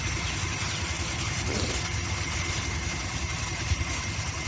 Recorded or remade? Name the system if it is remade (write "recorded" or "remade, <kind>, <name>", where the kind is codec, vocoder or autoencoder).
recorded